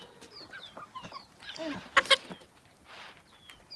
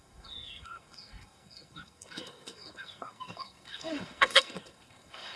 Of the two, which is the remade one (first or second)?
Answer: second